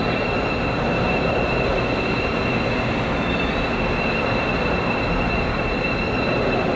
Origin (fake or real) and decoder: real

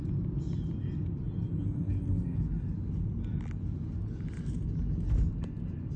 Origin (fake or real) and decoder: real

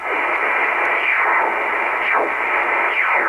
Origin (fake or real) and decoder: real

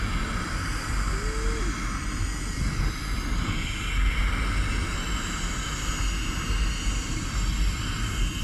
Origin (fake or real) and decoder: real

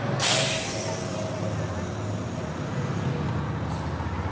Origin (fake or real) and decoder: real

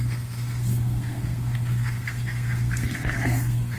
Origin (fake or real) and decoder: fake, codec, SNAC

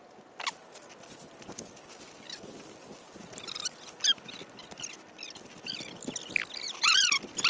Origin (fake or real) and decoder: real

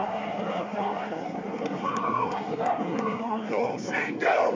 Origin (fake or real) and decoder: fake, codec, SNAC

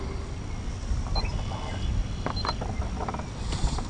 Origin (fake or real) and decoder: real